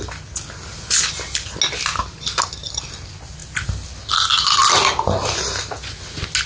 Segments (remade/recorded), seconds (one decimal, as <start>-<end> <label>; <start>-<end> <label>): 0.0-6.5 recorded